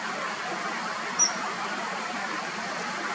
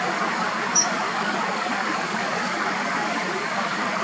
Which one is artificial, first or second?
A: second